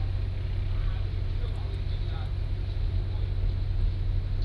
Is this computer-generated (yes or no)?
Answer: no